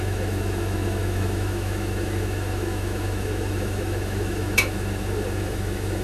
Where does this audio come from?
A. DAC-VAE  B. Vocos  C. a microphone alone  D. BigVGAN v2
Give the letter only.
A